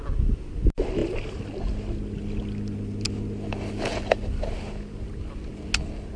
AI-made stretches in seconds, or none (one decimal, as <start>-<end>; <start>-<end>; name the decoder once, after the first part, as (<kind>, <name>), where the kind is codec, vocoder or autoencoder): none